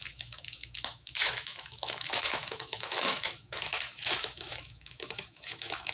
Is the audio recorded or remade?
remade